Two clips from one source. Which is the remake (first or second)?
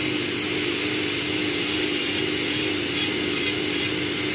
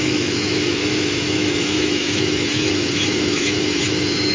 second